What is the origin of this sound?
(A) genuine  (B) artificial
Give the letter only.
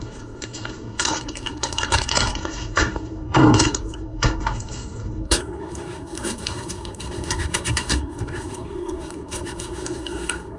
B